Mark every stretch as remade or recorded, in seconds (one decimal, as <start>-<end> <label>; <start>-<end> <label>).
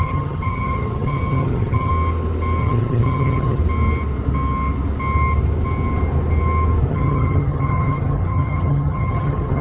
0.0-1.9 remade; 1.9-2.6 recorded; 2.6-3.6 remade; 3.6-6.9 recorded; 6.9-9.6 remade